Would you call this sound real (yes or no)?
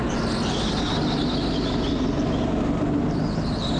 yes